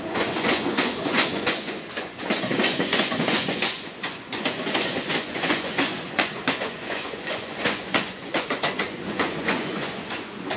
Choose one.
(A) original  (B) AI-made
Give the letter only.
B